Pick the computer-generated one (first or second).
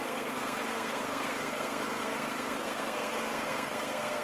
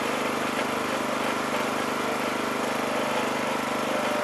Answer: first